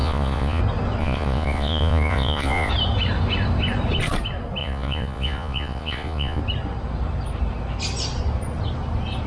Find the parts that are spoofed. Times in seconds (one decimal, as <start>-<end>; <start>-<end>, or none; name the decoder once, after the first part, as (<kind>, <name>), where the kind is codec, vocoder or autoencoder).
0.0-0.6 (vocoder, Vocos); 1.0-2.7; 4.6-6.4